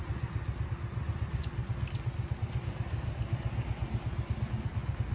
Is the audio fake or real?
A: real